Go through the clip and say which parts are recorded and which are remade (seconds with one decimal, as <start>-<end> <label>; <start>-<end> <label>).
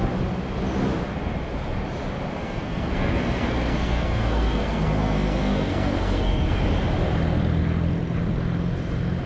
0.0-2.4 recorded; 2.4-6.6 remade; 6.6-9.3 recorded